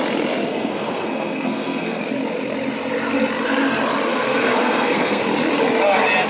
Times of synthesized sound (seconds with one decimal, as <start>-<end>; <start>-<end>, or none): 0.5-2.0; 4.1-5.2